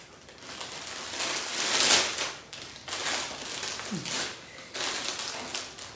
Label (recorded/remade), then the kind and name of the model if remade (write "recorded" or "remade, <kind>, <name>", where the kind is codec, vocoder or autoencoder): recorded